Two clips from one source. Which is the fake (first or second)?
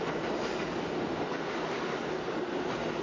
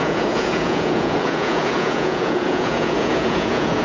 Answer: second